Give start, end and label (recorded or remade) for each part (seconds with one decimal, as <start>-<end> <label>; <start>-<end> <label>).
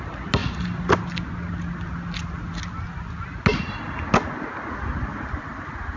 0.0-5.1 recorded; 5.1-6.0 remade